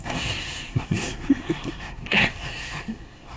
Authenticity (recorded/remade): remade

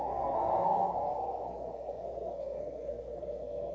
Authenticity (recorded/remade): remade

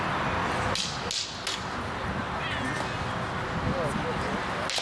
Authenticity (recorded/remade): recorded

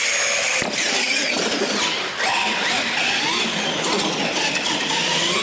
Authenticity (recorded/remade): recorded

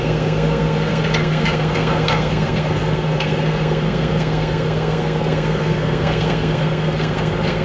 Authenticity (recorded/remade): remade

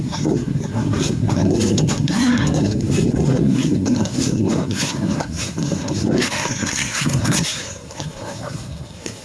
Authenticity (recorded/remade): remade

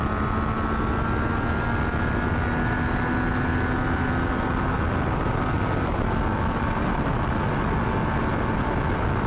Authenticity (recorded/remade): recorded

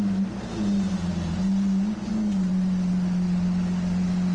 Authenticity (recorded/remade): recorded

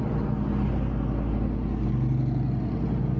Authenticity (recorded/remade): recorded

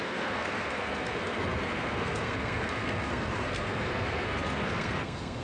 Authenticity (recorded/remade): remade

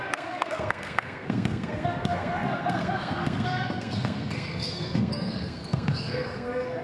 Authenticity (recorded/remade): remade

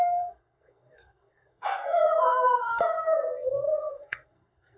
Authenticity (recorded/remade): remade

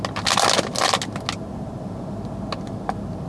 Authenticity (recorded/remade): recorded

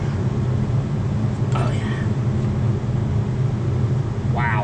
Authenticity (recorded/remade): recorded